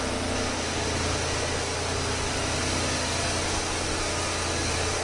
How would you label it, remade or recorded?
recorded